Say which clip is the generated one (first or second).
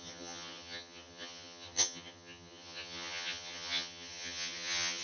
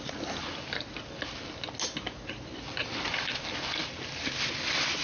first